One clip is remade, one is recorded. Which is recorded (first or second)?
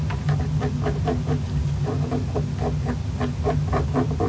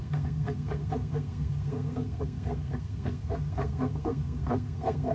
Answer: first